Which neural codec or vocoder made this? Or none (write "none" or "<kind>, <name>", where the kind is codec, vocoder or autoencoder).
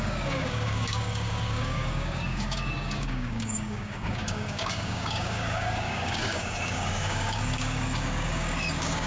codec, DAC